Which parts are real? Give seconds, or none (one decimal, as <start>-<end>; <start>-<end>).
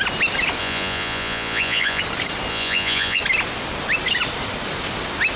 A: 0.0-0.6; 2.0-2.5; 3.2-5.4